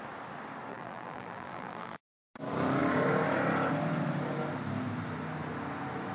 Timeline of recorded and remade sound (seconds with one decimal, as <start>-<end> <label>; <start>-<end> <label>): 0.0-0.7 recorded; 0.7-2.1 remade; 2.1-6.1 recorded